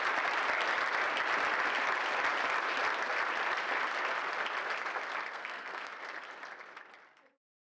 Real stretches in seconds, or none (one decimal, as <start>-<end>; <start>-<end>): 0.0-5.3; 6.0-7.6